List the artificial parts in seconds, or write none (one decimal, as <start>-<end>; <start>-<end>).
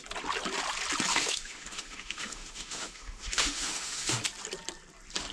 1.1-4.2